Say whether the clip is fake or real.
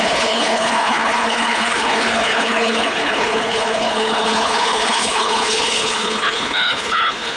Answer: fake